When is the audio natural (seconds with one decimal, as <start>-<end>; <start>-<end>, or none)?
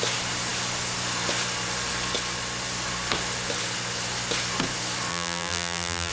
0.0-5.1